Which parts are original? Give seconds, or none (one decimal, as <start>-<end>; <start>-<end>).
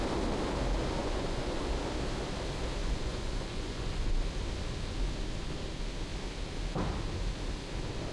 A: 0.0-1.0; 1.6-2.8; 4.1-8.1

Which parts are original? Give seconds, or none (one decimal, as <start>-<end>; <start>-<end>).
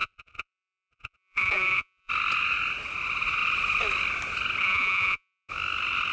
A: 2.1-4.6; 5.5-6.1